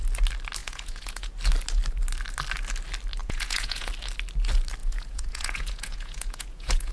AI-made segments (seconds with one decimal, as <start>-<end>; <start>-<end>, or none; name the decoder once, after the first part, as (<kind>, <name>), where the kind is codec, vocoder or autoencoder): 0.6-1.3 (vocoder, Vocos); 3.2-3.9; 4.8-6.9